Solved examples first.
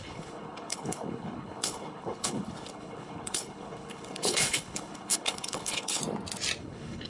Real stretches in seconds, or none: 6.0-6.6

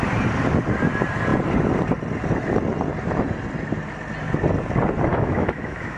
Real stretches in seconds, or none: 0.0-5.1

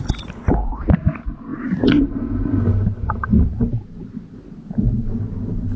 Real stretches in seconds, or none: 0.0-5.8

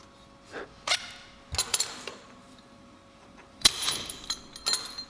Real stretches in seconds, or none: 0.0-1.6; 4.4-5.1